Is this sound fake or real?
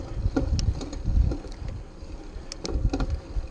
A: real